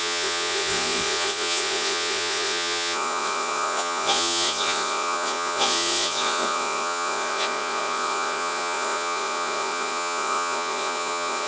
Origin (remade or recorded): remade